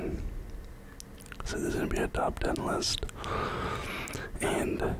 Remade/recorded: recorded